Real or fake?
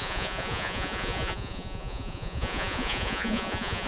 fake